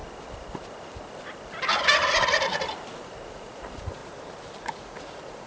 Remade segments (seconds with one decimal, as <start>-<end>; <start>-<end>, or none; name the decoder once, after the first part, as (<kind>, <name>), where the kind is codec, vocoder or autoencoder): 3.3-4.0 (vocoder, Vocos); 4.6-5.5